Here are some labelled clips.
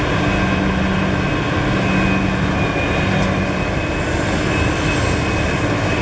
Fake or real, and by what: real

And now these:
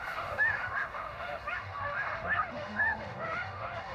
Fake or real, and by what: fake, autoencoder, DAC-VAE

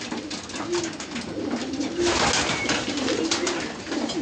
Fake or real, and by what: real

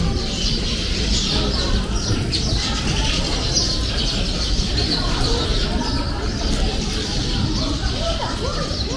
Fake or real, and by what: fake, vocoder, BigVGAN v2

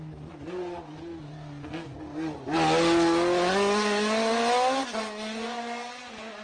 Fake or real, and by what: real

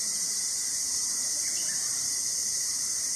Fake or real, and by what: fake, vocoder, BigVGAN v2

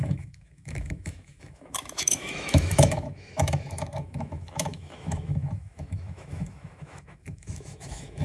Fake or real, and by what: fake, autoencoder, DAC-VAE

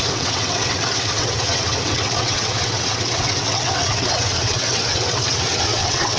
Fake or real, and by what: fake, vocoder, WaveNeXt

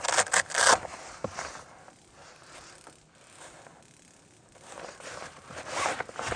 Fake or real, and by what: real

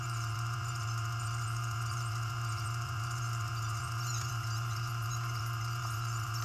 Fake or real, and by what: fake, vocoder, BigVGAN v2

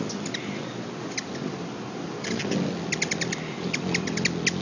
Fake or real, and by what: real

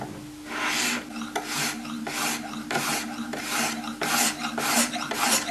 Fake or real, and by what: real